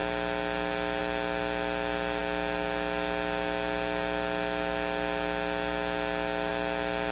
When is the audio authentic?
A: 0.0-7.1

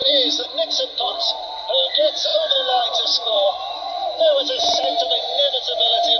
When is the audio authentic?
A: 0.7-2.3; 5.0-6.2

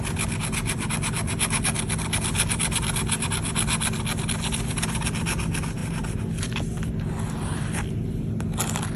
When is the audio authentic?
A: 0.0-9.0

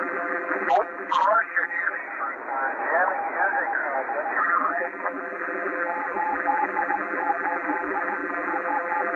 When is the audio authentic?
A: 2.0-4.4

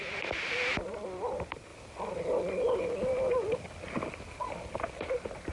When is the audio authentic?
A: 1.7-5.0

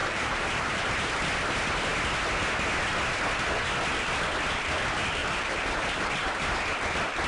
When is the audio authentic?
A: 0.8-5.2; 6.1-7.3

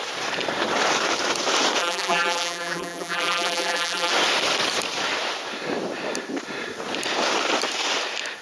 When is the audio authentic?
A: 0.0-1.8; 4.1-8.4

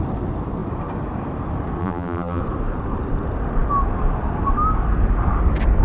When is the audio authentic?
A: 0.0-1.8; 2.4-5.8